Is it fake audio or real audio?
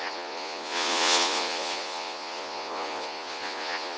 fake